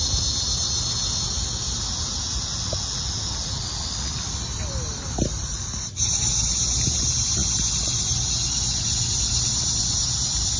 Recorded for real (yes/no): yes